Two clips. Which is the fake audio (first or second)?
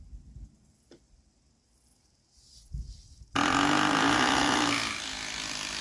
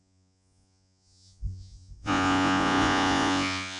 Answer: second